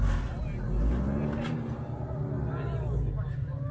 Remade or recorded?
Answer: recorded